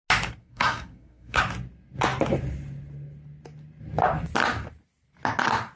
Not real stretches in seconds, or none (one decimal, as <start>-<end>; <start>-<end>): 0.4-1.4